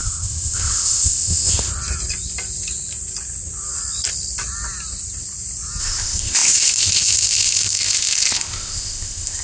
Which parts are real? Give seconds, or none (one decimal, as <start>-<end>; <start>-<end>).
1.7-5.8